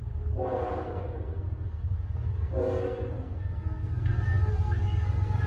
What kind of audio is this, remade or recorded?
remade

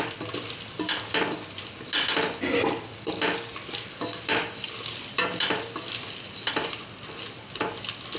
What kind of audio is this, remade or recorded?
recorded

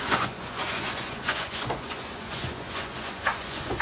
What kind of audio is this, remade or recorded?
remade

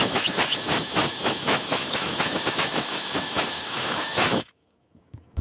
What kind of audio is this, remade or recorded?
remade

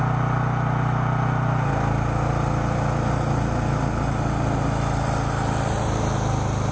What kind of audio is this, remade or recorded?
recorded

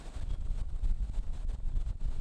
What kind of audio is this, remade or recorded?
recorded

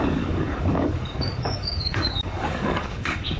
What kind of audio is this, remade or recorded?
remade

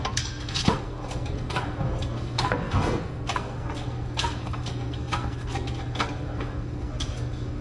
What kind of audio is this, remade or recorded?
remade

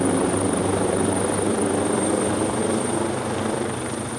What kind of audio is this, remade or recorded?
recorded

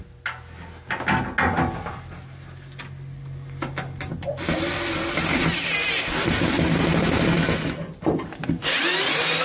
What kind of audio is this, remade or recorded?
recorded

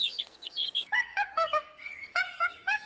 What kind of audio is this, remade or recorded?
remade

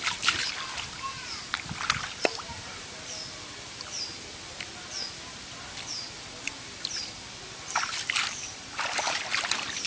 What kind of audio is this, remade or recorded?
recorded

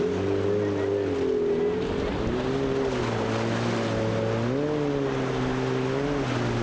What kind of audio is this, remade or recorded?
recorded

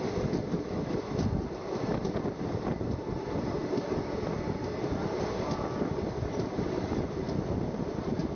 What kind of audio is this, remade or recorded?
recorded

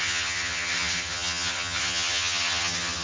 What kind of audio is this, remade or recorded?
remade